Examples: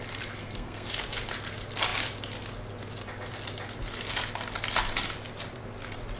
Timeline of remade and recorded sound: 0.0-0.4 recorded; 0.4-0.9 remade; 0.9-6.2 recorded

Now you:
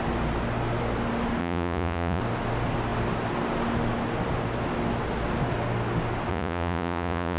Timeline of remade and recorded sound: 0.0-1.4 recorded; 1.4-2.2 remade; 2.2-6.3 recorded; 6.3-7.4 remade

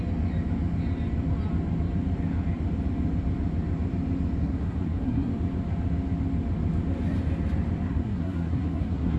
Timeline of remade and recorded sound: 0.0-4.4 recorded; 4.4-5.3 remade; 5.3-7.9 recorded; 7.9-9.2 remade

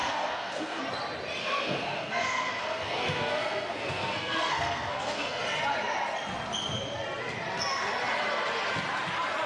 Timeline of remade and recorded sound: 0.0-0.8 remade; 0.8-1.4 recorded; 1.4-5.4 remade; 5.4-9.5 recorded

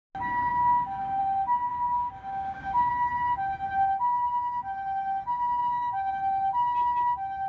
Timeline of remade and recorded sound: 0.0-0.5 recorded; 0.5-1.2 remade; 1.2-1.7 recorded; 1.7-2.9 remade; 2.9-5.6 recorded; 5.6-6.1 remade; 6.1-7.5 recorded